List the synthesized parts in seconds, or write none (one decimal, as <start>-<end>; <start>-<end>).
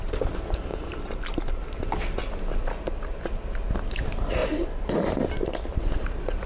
0.7-1.6; 4.4-5.5